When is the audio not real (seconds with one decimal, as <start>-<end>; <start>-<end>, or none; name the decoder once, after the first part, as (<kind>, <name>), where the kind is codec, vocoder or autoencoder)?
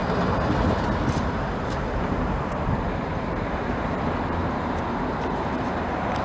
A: 1.1-6.2 (vocoder, BigVGAN v2)